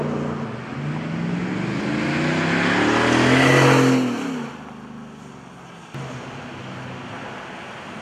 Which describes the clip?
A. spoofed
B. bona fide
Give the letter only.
B